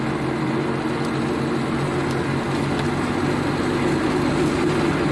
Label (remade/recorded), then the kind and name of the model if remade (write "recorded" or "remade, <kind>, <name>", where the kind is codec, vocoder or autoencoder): recorded